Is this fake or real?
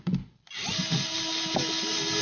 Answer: real